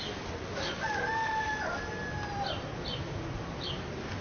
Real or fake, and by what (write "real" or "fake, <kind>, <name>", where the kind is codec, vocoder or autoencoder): real